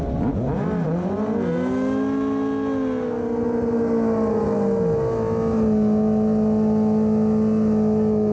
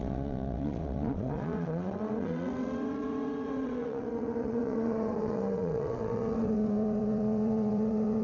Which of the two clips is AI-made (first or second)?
second